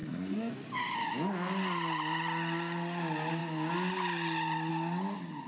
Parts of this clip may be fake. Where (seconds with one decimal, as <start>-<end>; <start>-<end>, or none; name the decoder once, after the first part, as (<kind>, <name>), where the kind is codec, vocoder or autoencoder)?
0.0-0.5 (codec, SNAC)